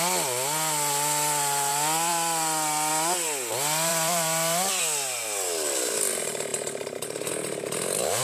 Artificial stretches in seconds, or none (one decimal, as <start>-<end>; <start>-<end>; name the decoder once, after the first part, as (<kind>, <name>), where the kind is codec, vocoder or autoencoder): 1.7-2.9 (vocoder, BigVGAN v2); 3.9-4.8; 6.5-7.3